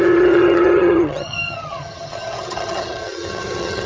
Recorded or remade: remade